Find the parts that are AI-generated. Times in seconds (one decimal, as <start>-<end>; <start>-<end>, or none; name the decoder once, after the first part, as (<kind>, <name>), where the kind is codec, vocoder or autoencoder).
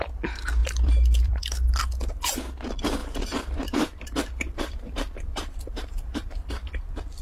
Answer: 0.6-1.4 (vocoder, BigVGAN v2); 3.0-6.5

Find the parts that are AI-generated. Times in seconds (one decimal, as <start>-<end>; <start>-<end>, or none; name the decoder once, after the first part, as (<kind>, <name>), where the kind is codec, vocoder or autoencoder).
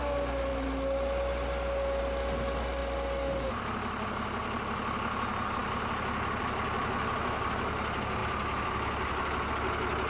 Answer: 5.6-6.4 (vocoder, BigVGAN v2); 8.2-9.5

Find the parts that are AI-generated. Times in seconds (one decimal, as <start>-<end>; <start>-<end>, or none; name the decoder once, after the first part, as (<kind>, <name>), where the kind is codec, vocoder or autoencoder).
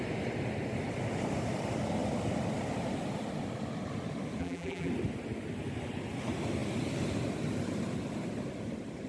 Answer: 4.4-4.9 (vocoder, BigVGAN v2)